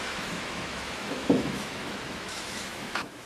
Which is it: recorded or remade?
remade